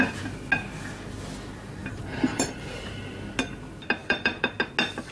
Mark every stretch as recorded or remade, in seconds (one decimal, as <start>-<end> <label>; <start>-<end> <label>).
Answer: 0.0-1.8 recorded; 1.8-3.3 remade; 3.3-4.0 recorded; 4.0-4.6 remade; 4.6-5.1 recorded